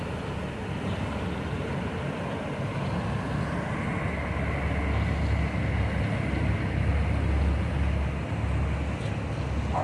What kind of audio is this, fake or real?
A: real